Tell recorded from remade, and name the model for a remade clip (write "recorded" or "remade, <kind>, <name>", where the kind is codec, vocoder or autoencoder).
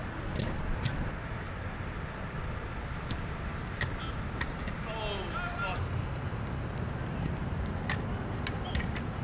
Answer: recorded